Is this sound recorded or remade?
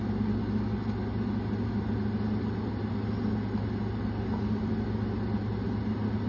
recorded